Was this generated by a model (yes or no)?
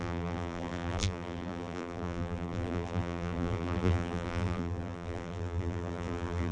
yes